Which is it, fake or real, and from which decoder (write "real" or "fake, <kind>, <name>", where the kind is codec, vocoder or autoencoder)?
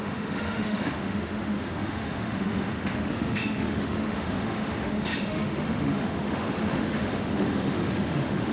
fake, autoencoder, DAC-VAE